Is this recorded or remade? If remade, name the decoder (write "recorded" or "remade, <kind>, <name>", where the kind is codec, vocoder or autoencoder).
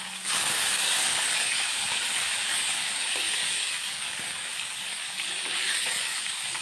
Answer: remade, codec, DAC